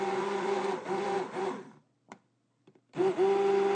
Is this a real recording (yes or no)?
no